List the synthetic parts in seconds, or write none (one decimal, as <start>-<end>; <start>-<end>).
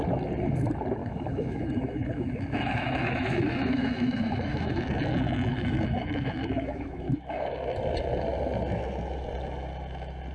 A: 1.0-4.8; 5.5-7.5